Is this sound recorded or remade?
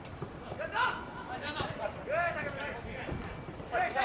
remade